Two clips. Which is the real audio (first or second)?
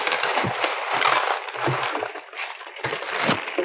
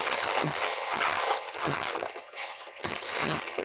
first